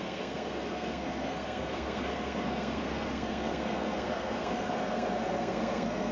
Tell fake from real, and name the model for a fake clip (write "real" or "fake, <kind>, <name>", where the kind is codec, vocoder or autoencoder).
fake, codec, SNAC